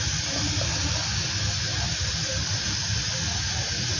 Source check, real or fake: real